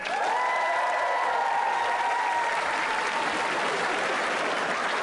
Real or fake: fake